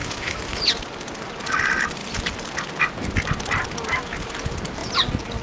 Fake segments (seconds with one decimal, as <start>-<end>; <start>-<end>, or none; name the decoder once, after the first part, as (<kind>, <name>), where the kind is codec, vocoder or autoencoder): 0.0-0.6 (autoencoder, DAC-VAE)